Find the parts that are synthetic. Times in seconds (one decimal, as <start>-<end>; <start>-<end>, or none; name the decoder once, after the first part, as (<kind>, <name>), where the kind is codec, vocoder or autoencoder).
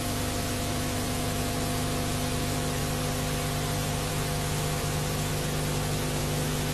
0.0-2.8 (autoencoder, DAC-VAE); 4.1-5.3; 6.2-6.7